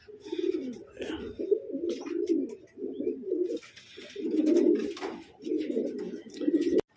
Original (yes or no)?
yes